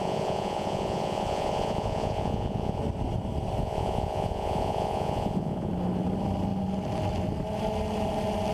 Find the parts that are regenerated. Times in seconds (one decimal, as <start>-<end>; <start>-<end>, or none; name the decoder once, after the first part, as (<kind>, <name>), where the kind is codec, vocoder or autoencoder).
0.0-2.8 (vocoder, Vocos); 3.6-5.7